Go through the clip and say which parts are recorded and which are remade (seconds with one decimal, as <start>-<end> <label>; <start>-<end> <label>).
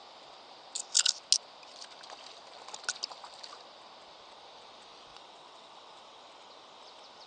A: 0.0-5.1 recorded; 5.1-6.2 remade; 6.2-7.3 recorded